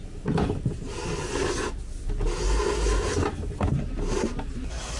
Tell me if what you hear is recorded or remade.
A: recorded